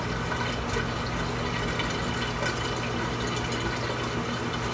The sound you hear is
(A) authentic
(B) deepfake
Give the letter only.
A